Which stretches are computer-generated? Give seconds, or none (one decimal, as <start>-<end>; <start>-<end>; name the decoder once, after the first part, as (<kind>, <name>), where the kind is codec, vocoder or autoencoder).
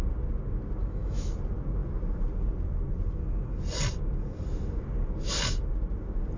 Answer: 0.8-1.3 (autoencoder, DAC-VAE)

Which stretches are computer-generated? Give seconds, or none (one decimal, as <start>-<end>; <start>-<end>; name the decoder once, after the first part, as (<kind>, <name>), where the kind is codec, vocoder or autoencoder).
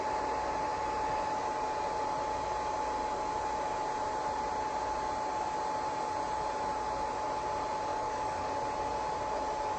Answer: 7.9-8.5 (codec, DAC)